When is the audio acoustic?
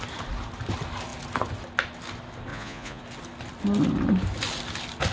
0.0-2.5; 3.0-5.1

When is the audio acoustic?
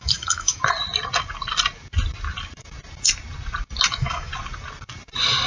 0.6-3.9; 4.3-5.5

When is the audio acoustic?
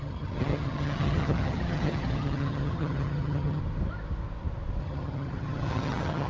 3.6-4.8